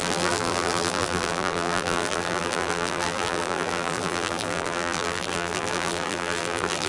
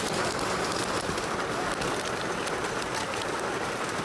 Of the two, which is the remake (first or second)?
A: first